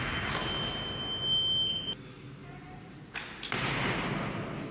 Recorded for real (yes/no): yes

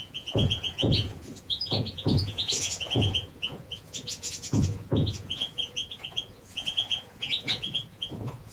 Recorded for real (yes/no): no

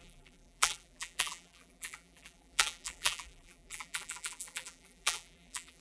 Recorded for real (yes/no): no